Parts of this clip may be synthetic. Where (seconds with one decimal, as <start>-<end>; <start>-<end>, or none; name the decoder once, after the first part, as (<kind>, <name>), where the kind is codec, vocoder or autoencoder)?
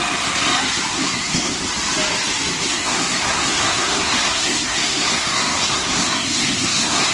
0.9-1.6 (codec, SNAC); 2.7-7.1